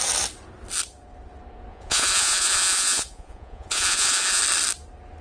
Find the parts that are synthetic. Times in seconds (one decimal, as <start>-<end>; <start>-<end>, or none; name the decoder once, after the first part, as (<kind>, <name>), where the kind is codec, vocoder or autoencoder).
1.7-4.4 (vocoder, Vocos)